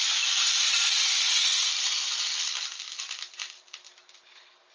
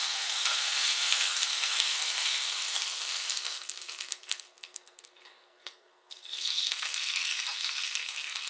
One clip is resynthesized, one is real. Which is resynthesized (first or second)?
second